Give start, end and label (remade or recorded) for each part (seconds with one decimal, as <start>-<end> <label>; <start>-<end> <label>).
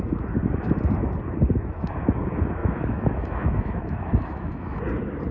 0.0-2.6 recorded; 2.6-4.8 remade; 4.8-5.3 recorded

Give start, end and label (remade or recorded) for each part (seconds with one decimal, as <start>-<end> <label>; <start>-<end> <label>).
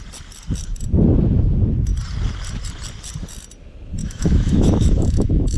0.0-4.0 recorded; 4.0-5.6 remade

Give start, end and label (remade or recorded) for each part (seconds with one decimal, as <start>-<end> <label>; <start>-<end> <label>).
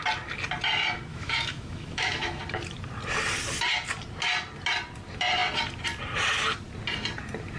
0.0-1.1 recorded; 1.1-2.4 remade; 2.4-7.6 recorded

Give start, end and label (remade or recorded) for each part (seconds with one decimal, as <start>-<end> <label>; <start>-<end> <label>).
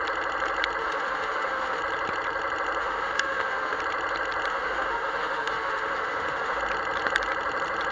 0.0-0.8 recorded; 0.8-1.8 remade; 1.8-2.8 recorded; 2.8-3.8 remade; 3.8-4.5 recorded; 4.5-6.6 remade; 6.6-7.9 recorded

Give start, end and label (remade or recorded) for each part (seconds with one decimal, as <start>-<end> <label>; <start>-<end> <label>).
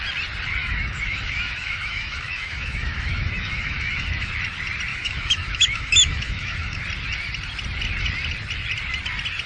0.0-0.6 recorded; 0.6-4.3 remade; 4.3-4.9 recorded; 4.9-6.8 remade; 6.8-9.5 recorded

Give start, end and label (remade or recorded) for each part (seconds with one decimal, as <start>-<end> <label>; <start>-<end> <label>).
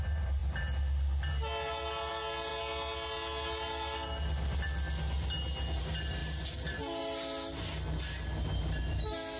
0.0-9.4 recorded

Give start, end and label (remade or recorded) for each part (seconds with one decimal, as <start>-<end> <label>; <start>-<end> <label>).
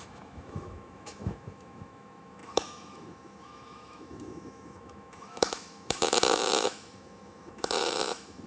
0.0-8.5 remade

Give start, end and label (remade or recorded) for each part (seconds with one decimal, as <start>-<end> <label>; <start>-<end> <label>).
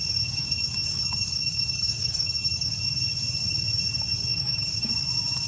0.0-0.4 recorded; 0.4-2.7 remade; 2.7-4.3 recorded; 4.3-4.9 remade; 4.9-5.5 recorded